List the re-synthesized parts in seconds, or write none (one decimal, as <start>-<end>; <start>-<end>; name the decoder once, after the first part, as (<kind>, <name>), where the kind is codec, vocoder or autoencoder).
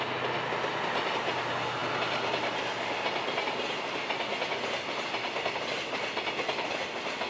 none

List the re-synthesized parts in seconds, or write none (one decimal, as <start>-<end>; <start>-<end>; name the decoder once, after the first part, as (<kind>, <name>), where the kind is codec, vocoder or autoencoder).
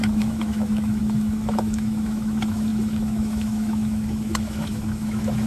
0.0-5.5 (autoencoder, DAC-VAE)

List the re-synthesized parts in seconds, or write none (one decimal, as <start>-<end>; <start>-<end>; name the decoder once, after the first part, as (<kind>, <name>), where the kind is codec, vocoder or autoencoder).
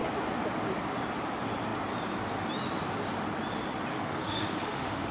3.9-5.1 (autoencoder, DAC-VAE)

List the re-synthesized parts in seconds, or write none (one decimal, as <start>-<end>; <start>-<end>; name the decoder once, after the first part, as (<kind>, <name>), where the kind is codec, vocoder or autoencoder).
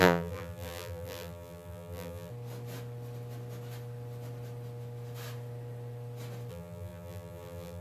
0.0-2.3 (vocoder, BigVGAN v2); 6.5-7.8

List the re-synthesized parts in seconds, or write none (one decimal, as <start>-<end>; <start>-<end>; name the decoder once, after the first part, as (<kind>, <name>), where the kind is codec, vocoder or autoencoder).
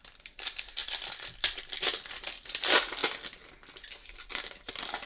none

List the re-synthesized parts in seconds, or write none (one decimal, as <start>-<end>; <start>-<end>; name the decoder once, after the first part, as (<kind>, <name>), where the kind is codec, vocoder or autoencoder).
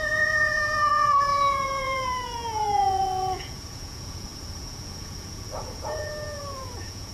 0.0-7.1 (vocoder, Vocos)